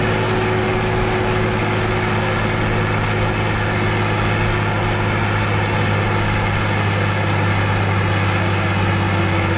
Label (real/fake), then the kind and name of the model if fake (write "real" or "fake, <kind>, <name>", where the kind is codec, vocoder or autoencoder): real